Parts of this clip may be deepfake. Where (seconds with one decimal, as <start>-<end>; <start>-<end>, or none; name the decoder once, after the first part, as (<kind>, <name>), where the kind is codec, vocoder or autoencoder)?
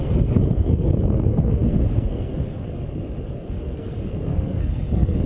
0.0-5.3 (codec, SNAC)